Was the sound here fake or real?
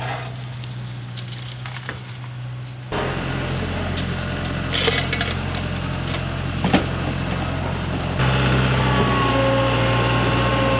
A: real